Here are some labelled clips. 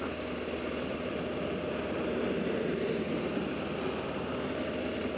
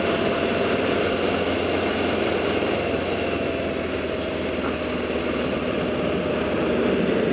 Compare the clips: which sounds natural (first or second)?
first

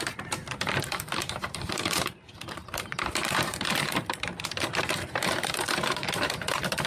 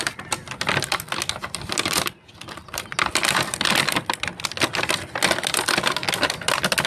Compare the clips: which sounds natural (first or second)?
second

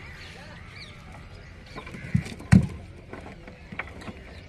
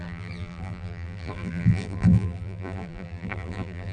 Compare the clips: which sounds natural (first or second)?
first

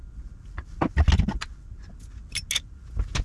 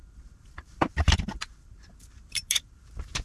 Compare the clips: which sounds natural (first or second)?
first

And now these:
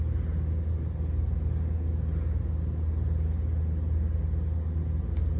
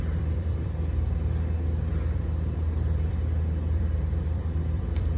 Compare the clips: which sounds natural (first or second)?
first